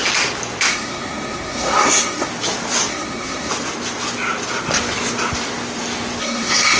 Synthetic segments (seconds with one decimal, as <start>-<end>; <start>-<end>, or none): 0.7-2.3; 2.9-3.5; 6.2-6.8